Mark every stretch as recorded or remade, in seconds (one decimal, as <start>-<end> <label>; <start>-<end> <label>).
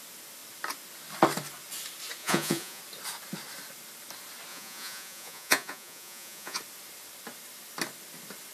0.0-2.2 recorded; 2.2-2.8 remade; 2.8-4.5 recorded; 4.5-6.6 remade; 6.6-8.5 recorded